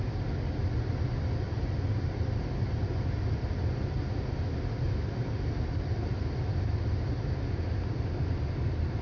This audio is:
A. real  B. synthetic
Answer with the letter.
A